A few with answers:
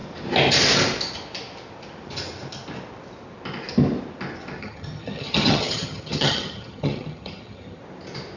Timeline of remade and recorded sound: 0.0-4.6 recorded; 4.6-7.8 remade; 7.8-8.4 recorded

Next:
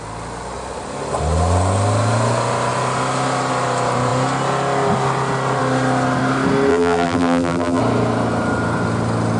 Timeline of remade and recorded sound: 0.0-6.7 recorded; 6.7-7.8 remade; 7.8-9.4 recorded

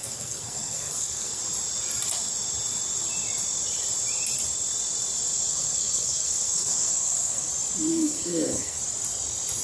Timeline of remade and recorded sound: 0.0-1.4 remade; 1.4-5.5 recorded; 5.5-7.5 remade; 7.5-7.9 recorded; 7.9-8.8 remade; 8.8-9.6 recorded

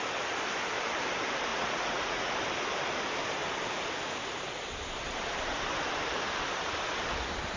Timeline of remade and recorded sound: 0.0-1.5 recorded; 1.5-2.3 remade; 2.3-7.6 recorded

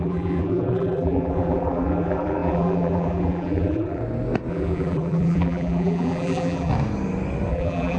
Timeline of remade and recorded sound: 0.0-4.0 remade; 4.0-4.5 recorded; 4.5-6.7 remade; 6.7-7.5 recorded; 7.5-8.0 remade

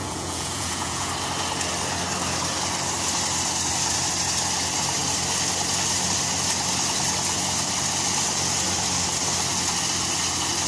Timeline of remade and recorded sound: 0.0-1.1 remade; 1.1-10.7 recorded

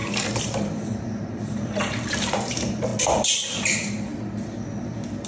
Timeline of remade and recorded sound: 0.0-2.9 remade; 2.9-3.5 recorded; 3.5-4.1 remade; 4.1-5.3 recorded